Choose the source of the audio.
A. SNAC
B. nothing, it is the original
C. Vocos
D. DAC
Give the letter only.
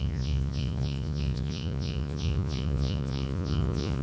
C